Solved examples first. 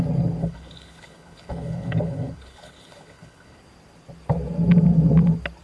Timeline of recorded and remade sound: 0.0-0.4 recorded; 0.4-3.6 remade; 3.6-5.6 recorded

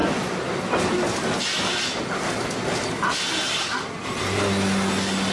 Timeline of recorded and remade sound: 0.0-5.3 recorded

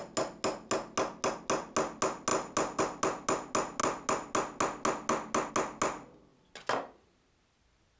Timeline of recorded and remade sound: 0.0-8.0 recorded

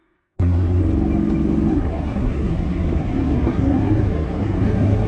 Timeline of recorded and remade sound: 0.0-0.8 remade; 0.8-1.7 recorded; 1.7-5.1 remade